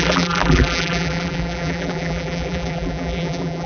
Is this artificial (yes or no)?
yes